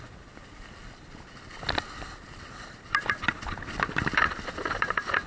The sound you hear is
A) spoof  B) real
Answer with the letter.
A